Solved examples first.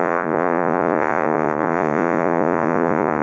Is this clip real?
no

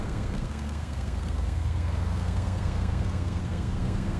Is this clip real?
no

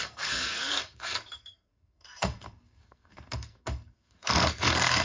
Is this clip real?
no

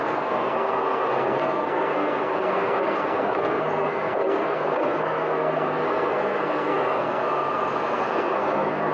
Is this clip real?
no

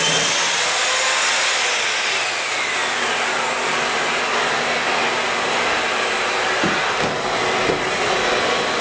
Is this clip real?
yes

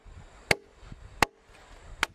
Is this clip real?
yes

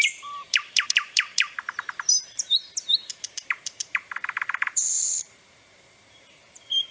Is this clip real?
no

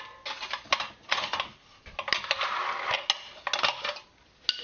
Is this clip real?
yes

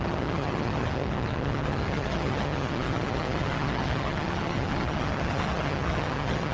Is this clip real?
no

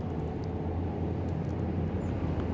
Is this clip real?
yes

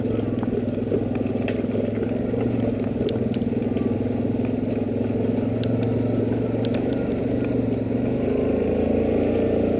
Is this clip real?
yes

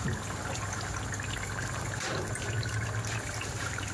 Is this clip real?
yes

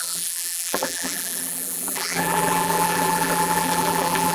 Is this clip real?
no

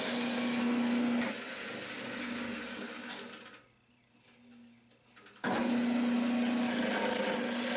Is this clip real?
yes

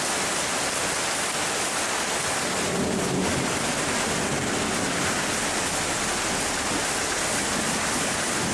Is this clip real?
yes